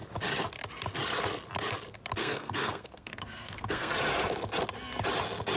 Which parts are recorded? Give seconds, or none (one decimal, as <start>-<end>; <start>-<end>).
0.0-2.2; 3.9-5.6